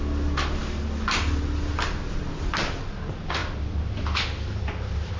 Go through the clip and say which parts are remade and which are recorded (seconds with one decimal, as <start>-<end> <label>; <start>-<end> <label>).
0.0-5.2 recorded